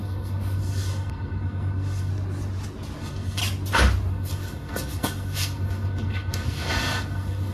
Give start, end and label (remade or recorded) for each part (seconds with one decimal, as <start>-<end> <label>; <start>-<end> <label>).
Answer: 0.0-2.1 remade; 2.1-3.0 recorded; 3.0-3.4 remade; 3.4-4.1 recorded; 4.1-7.5 remade